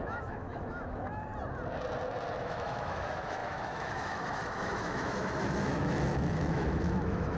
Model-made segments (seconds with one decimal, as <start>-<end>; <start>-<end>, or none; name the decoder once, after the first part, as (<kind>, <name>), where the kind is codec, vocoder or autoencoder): 0.0-1.3 (autoencoder, DAC-VAE); 2.3-7.4